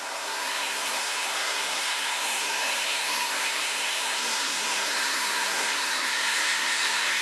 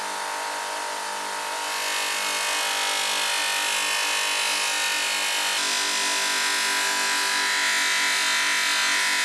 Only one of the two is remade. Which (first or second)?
first